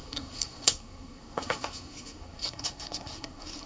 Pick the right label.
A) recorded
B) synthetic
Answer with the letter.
B